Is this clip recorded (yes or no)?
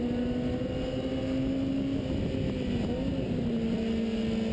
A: yes